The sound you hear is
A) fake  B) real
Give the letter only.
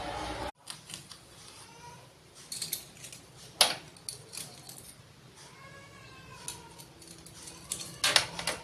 B